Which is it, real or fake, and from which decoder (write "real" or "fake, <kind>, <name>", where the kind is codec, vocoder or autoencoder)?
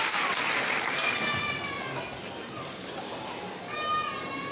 real